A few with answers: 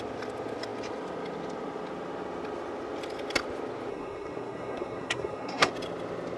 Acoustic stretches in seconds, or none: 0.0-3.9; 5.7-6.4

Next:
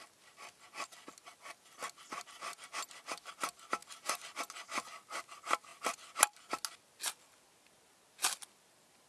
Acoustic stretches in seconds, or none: 0.0-9.1

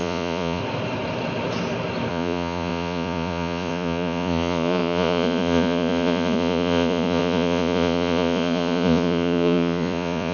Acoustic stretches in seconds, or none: 0.6-2.1

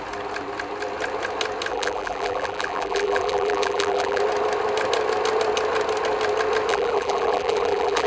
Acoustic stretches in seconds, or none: 0.0-1.7; 4.2-6.7

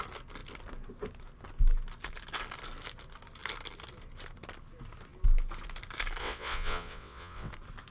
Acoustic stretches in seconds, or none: 0.0-6.2; 7.5-7.9